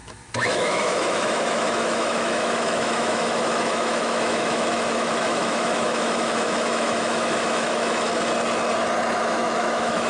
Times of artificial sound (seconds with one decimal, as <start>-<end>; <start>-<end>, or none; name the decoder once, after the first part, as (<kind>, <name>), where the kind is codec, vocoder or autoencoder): 0.0-8.1 (autoencoder, DAC-VAE); 9.2-10.1